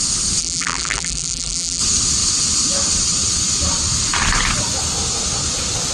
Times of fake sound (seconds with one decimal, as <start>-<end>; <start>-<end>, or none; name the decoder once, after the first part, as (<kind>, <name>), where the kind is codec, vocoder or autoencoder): 0.4-1.8 (vocoder, BigVGAN v2)